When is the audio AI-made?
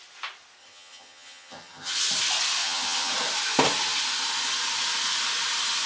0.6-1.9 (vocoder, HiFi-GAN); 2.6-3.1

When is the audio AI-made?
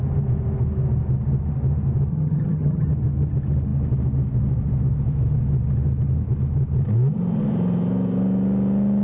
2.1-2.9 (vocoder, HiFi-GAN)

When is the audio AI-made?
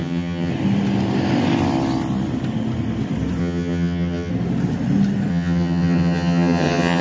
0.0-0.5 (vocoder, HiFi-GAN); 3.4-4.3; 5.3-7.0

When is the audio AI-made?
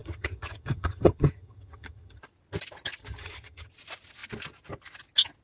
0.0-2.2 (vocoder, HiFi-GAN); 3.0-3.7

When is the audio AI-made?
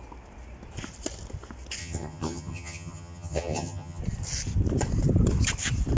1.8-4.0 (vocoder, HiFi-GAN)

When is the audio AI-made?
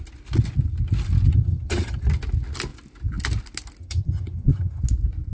1.3-2.0 (vocoder, HiFi-GAN); 3.8-4.8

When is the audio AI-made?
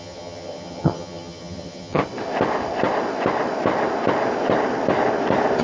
0.0-2.0 (vocoder, HiFi-GAN)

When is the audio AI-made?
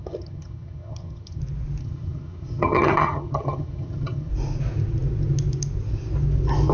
0.0-1.4 (vocoder, HiFi-GAN); 1.8-4.3